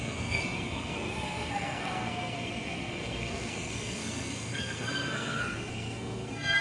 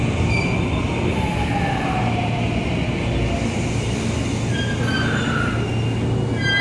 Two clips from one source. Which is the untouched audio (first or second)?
second